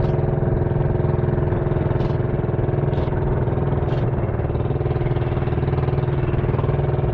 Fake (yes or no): no